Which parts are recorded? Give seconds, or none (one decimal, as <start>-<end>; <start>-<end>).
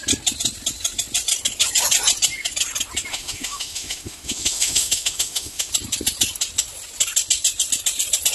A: 0.0-3.1; 5.7-8.3